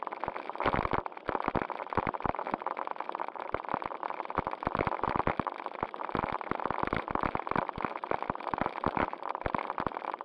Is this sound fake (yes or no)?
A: no